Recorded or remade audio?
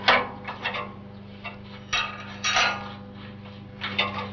recorded